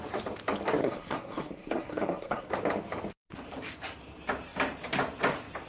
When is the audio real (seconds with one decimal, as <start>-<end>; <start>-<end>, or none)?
0.0-0.8; 2.5-5.7